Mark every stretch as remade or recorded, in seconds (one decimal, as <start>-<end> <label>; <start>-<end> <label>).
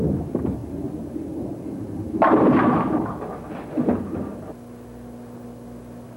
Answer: 0.0-6.2 recorded